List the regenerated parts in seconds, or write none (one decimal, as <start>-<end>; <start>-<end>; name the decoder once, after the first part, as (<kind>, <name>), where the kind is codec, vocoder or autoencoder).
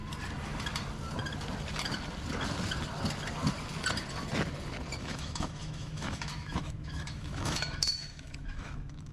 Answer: 5.0-9.1 (autoencoder, DAC-VAE)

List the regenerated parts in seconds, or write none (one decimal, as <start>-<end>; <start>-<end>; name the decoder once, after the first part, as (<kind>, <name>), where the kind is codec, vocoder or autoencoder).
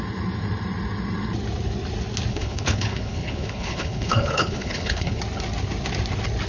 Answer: 2.3-5.2 (codec, HILCodec)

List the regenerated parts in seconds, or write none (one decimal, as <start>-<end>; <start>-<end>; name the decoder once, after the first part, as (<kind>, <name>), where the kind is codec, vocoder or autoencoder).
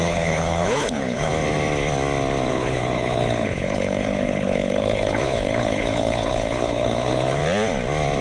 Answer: 0.0-1.3 (codec, HILCodec); 2.5-7.4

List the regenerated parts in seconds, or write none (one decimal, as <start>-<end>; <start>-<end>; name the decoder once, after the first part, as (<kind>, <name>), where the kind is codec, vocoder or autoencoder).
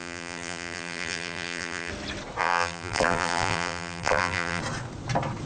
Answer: 0.0-1.9 (vocoder, BigVGAN v2); 2.4-4.6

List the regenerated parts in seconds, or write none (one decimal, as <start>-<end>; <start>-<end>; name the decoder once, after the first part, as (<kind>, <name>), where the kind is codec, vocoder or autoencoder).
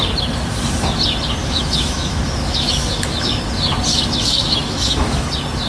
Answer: 1.4-3.4 (autoencoder, DAC-VAE); 3.9-5.3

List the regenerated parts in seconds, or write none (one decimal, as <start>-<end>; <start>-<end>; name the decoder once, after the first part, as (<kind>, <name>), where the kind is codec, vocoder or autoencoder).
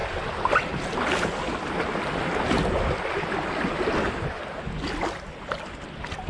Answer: none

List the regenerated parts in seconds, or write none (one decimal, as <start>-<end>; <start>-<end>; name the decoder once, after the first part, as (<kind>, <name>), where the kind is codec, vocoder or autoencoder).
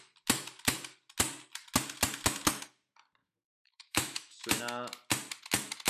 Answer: 3.2-4.6 (autoencoder, DAC-VAE)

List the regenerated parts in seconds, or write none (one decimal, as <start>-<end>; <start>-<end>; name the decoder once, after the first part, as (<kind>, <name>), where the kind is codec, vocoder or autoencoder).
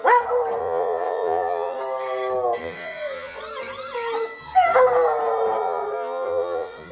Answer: 0.6-1.8 (vocoder, Vocos); 2.6-3.4; 5.6-6.9